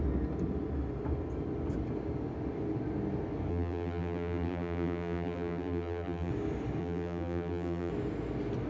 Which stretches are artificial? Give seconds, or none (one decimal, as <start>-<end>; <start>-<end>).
3.5-6.3; 6.8-7.9